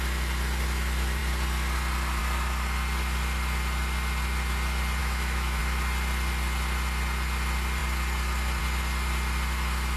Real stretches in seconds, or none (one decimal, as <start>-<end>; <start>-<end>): 0.0-5.0; 5.6-10.0